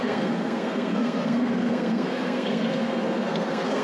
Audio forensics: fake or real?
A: fake